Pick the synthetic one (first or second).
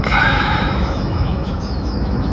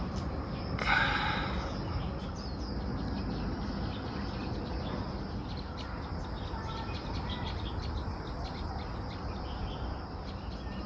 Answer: first